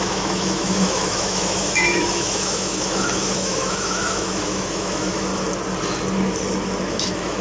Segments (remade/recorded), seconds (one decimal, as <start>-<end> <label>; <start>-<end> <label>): 0.0-5.3 remade; 5.3-6.9 recorded; 6.9-7.4 remade